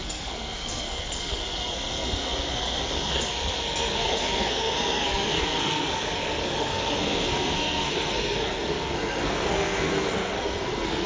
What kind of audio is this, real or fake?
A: fake